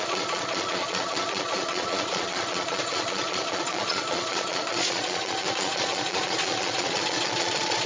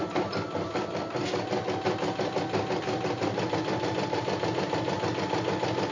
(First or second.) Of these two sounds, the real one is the second